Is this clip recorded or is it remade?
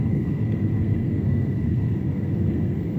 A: remade